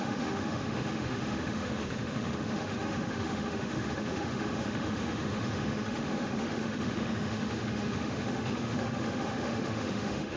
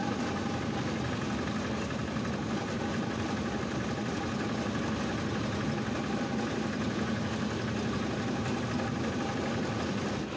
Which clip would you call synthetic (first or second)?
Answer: first